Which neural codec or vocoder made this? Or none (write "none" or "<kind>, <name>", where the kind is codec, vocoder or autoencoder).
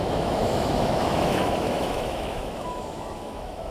autoencoder, DAC-VAE